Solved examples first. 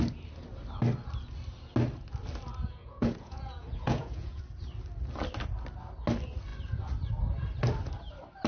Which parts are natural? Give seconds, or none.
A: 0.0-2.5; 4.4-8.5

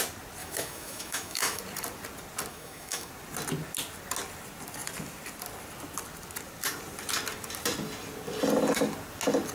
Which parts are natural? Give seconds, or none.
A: 0.0-0.4; 1.6-2.5; 3.1-9.5